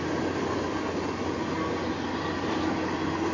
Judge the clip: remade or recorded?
recorded